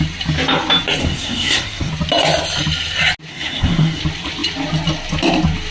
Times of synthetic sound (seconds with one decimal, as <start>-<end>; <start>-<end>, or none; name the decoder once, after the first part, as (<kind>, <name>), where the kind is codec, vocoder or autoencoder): 1.0-1.9 (codec, SNAC); 3.3-4.0